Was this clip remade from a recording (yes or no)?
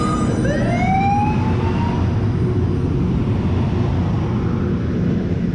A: no